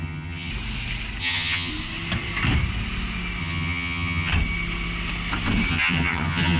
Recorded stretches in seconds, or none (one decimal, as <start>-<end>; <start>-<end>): 0.5-1.2; 1.7-3.4; 4.3-5.7